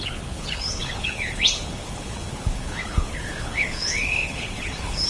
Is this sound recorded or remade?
remade